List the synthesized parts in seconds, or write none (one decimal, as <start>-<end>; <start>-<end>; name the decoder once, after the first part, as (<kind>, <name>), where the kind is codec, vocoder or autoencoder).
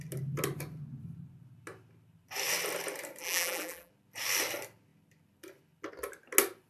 3.2-3.9 (vocoder, BigVGAN v2)